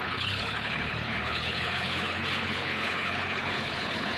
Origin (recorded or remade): remade